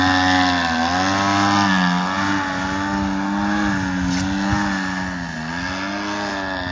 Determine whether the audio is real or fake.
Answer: real